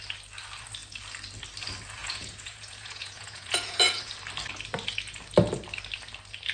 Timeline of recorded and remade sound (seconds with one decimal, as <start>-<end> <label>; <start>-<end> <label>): 0.0-2.0 recorded; 2.0-4.1 remade; 4.1-6.5 recorded